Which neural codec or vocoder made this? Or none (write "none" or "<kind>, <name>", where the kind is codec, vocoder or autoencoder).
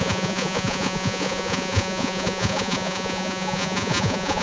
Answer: vocoder, Vocos